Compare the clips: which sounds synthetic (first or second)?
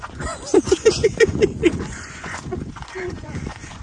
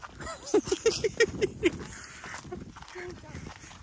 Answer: first